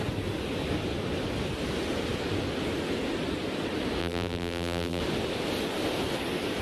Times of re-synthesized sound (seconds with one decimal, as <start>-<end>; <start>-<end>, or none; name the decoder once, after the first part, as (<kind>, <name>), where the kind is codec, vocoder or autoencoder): 4.0-5.0 (vocoder, BigVGAN v2)